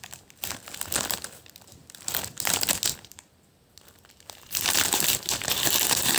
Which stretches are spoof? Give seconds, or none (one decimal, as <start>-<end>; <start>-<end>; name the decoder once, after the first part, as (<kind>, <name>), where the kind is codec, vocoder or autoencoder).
none